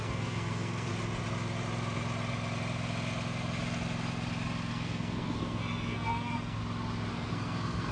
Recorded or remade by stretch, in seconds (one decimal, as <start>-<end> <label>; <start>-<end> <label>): 0.0-0.9 remade; 0.9-4.7 recorded; 4.7-6.6 remade; 6.6-7.1 recorded; 7.1-7.9 remade